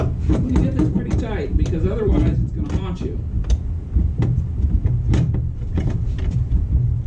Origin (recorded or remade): remade